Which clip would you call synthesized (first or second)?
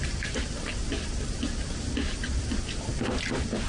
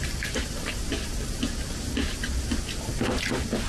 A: first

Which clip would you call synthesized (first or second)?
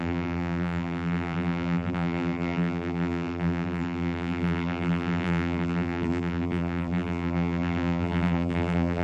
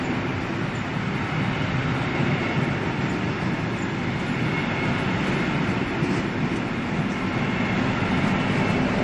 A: first